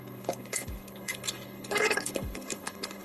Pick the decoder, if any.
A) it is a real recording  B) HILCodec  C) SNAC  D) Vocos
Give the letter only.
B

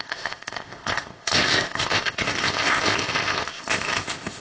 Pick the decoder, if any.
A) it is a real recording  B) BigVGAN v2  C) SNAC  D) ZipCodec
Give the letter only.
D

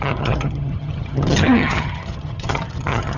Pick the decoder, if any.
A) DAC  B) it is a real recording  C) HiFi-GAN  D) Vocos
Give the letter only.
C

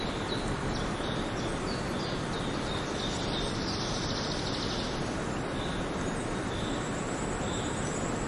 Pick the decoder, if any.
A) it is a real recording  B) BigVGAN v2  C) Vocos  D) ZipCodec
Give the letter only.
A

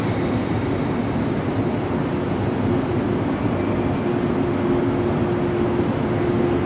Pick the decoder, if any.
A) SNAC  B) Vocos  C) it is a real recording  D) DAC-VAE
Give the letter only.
C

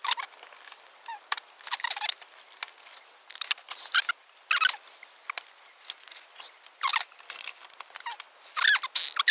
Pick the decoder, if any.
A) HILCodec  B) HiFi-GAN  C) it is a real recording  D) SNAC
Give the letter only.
C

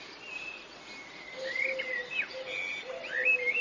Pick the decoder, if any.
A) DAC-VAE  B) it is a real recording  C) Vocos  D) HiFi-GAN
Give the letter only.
B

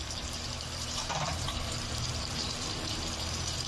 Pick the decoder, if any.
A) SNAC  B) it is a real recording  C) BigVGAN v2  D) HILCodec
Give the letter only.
C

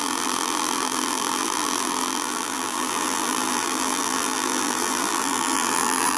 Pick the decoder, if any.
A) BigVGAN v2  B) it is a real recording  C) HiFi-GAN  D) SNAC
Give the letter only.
A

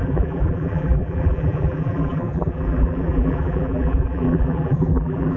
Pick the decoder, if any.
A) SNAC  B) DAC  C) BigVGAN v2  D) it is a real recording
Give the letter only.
C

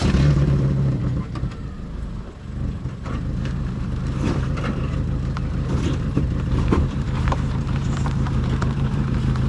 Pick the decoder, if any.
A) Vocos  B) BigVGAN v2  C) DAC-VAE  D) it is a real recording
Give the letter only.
B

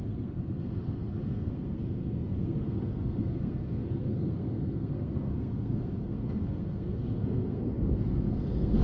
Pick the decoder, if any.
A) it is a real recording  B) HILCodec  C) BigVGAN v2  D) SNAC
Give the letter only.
D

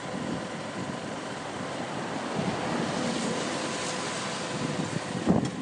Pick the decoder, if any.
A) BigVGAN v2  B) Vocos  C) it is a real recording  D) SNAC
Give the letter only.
A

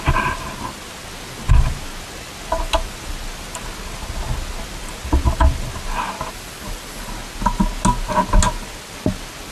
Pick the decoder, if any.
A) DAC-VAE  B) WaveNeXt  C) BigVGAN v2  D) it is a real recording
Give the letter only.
D